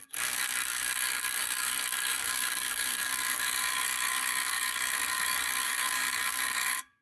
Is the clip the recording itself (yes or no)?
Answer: no